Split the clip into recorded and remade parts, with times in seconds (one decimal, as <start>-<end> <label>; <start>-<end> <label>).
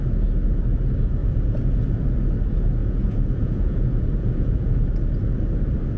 0.0-1.2 recorded; 1.2-1.8 remade; 1.8-2.8 recorded; 2.8-4.9 remade; 4.9-6.0 recorded